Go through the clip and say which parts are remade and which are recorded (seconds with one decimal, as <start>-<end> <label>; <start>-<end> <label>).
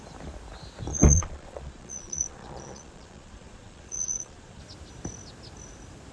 0.0-0.9 recorded; 0.9-4.6 remade; 4.6-6.1 recorded